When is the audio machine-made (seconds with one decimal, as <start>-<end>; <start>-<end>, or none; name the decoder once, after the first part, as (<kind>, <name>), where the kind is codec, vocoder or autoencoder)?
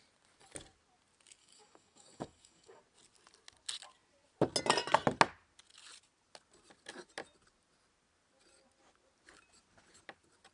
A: 1.4-2.8 (codec, DAC)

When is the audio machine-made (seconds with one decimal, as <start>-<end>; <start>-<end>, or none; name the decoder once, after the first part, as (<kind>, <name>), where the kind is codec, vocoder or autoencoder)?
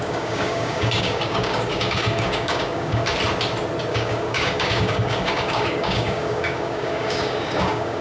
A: 0.0-3.0 (codec, DAC); 3.9-8.0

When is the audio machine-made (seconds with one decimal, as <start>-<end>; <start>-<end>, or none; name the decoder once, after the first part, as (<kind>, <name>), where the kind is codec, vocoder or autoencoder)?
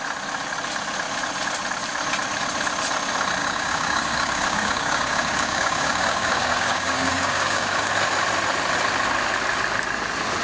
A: 3.4-7.9 (codec, DAC)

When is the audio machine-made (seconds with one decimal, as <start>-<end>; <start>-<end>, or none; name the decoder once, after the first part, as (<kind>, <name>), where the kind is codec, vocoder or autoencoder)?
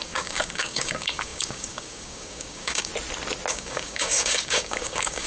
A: 0.0-2.9 (codec, DAC); 3.5-5.3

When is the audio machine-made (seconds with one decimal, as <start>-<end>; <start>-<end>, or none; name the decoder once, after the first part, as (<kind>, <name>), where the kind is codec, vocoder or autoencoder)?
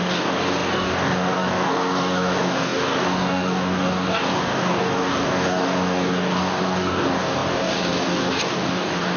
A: 0.0-9.2 (codec, DAC)